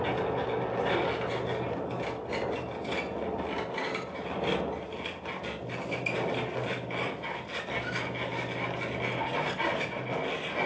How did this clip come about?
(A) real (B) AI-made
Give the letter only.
A